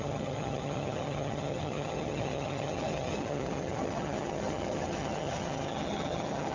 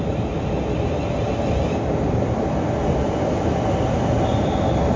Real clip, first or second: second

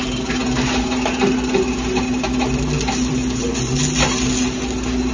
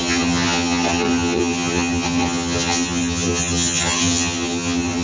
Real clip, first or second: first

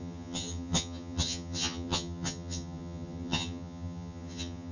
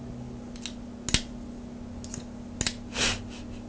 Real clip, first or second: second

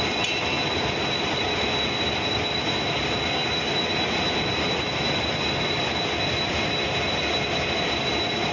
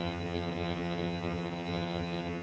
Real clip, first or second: first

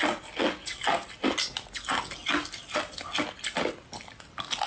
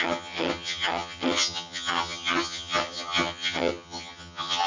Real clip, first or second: first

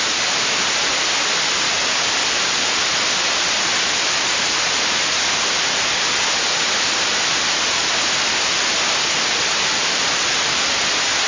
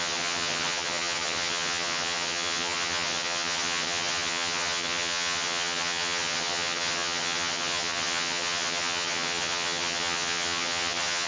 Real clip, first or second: first